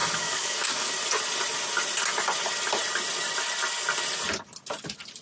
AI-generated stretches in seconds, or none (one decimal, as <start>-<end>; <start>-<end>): 0.0-0.9